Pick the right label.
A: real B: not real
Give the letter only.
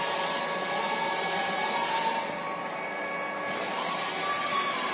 A